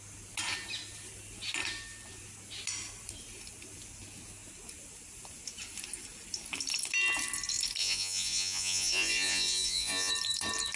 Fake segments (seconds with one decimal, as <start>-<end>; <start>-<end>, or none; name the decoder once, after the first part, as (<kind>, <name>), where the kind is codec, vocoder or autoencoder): 7.8-10.1 (vocoder, Vocos)